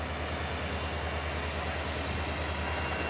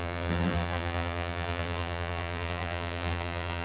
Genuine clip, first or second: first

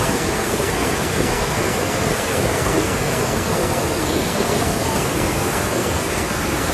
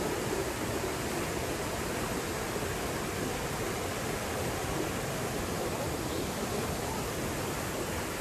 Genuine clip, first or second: second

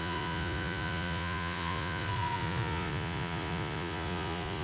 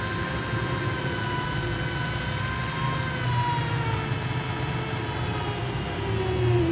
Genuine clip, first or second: second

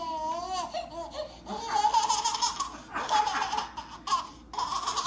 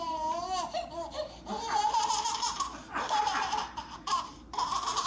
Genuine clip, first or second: first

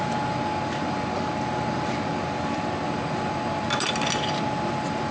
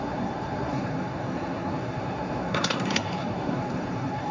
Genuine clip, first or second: first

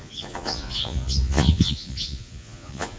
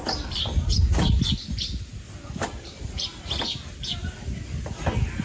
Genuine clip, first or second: second